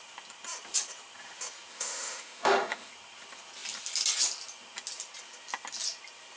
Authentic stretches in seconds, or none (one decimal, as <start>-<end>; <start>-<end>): 0.0-1.7; 2.9-6.4